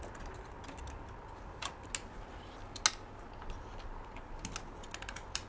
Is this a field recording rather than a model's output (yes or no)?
yes